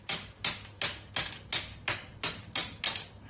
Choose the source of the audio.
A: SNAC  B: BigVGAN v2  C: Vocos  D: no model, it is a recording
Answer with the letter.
D